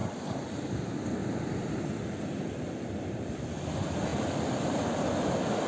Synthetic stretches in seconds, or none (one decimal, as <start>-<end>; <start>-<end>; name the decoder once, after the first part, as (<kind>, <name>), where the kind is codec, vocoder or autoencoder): 0.0-0.6 (vocoder, BigVGAN v2); 1.2-3.1; 4.1-4.9